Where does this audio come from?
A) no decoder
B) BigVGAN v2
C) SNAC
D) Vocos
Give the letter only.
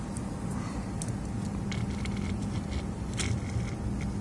A